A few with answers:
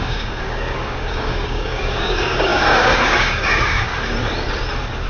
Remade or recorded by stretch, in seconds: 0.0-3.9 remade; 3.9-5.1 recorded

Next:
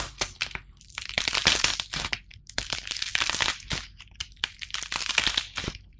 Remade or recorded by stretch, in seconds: 0.0-6.0 remade